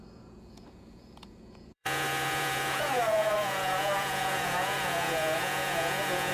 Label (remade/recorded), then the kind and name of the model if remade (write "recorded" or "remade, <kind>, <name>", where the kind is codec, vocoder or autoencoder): remade, vocoder, Vocos